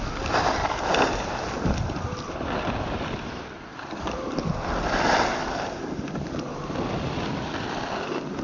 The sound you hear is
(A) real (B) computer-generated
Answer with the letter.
A